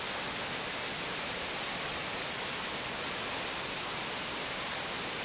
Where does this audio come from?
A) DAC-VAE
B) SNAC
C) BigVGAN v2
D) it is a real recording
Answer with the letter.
D